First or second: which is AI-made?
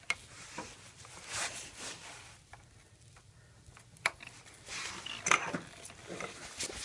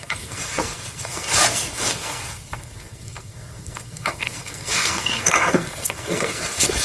second